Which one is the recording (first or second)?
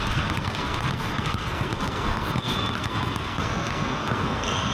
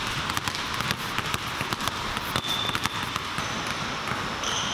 second